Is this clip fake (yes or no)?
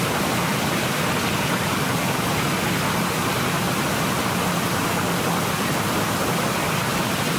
no